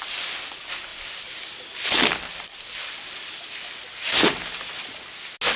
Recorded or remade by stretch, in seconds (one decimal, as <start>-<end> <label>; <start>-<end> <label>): 0.0-0.9 recorded; 0.9-2.8 remade; 2.8-3.8 recorded; 3.8-5.1 remade; 5.1-5.6 recorded